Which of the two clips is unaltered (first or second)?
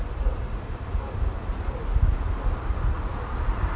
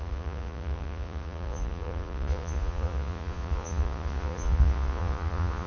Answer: first